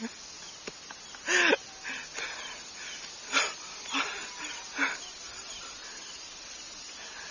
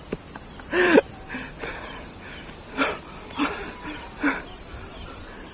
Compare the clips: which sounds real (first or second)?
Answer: first